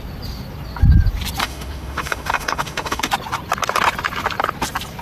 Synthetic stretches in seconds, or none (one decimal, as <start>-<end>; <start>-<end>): 1.4-3.1